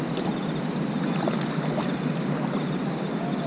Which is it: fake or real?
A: real